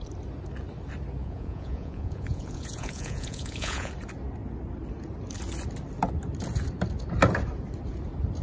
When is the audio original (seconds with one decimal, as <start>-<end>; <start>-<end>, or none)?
0.0-1.2; 3.9-8.4